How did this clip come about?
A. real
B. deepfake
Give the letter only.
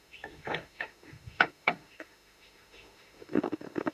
B